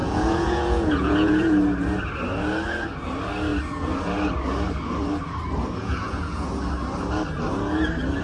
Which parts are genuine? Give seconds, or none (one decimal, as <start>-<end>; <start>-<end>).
1.6-5.8; 6.5-8.2

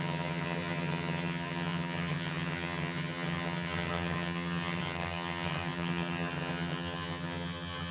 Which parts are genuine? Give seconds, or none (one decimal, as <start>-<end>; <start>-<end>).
none

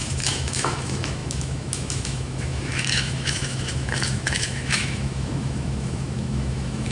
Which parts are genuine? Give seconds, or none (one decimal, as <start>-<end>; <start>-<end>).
none